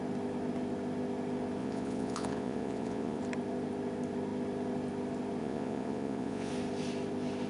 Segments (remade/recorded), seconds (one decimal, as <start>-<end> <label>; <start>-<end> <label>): 0.0-1.6 recorded; 1.6-3.2 remade; 3.2-5.4 recorded; 5.4-6.5 remade; 6.5-7.5 recorded